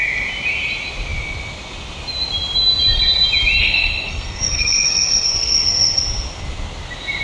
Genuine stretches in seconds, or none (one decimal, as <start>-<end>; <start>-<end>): 0.0-3.6; 6.0-7.2